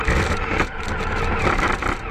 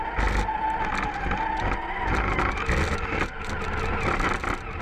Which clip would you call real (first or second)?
second